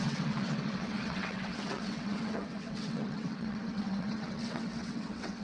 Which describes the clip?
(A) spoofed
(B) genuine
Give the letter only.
A